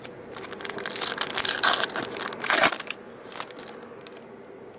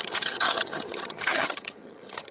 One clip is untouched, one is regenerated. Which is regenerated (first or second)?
second